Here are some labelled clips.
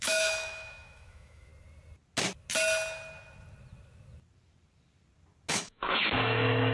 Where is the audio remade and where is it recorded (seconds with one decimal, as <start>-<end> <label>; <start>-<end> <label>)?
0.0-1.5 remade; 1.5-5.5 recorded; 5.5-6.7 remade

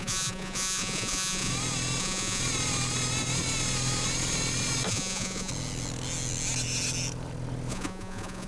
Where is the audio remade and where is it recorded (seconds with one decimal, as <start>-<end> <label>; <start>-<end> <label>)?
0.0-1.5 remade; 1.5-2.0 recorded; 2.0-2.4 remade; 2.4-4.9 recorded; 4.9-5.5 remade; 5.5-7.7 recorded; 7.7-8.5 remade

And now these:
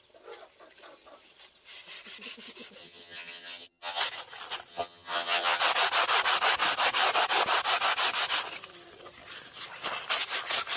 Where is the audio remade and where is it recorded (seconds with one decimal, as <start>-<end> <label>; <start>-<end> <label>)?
0.0-2.8 recorded; 2.8-4.0 remade; 4.0-4.7 recorded; 4.7-5.6 remade; 5.6-10.8 recorded

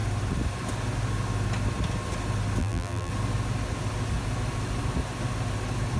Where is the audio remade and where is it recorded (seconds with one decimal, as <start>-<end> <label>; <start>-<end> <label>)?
0.0-2.6 recorded; 2.6-3.1 remade; 3.1-6.0 recorded